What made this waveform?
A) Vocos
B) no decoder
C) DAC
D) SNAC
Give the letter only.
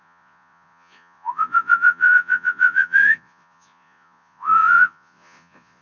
A